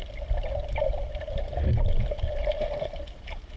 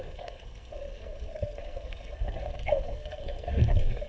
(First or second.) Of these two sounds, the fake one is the second